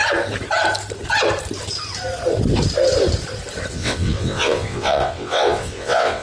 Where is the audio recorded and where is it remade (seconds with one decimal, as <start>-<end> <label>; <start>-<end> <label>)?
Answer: 0.0-3.7 recorded; 3.7-6.2 remade